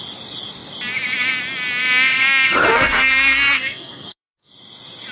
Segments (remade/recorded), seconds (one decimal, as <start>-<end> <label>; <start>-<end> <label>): 0.0-2.7 recorded; 2.7-4.5 remade; 4.5-5.1 recorded